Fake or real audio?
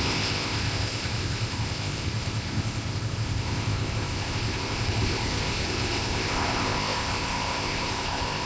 fake